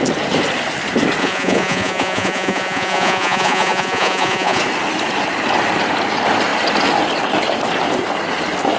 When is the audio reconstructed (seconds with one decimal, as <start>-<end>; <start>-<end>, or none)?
1.2-4.6